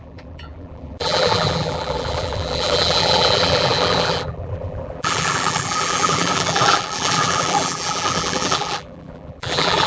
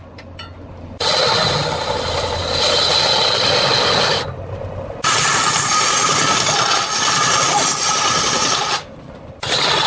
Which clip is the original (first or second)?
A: second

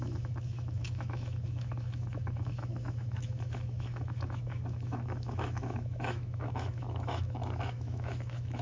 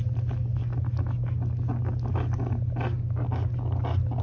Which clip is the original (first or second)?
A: second